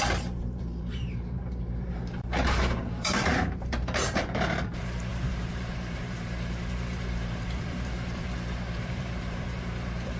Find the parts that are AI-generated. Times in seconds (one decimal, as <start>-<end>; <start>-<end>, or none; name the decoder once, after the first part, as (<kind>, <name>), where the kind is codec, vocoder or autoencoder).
0.0-10.2 (vocoder, BigVGAN v2)